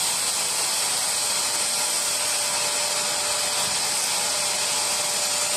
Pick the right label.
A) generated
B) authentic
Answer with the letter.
B